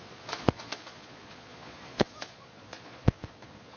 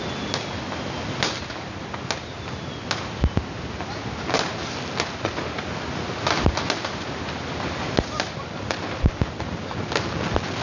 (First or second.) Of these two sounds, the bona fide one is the second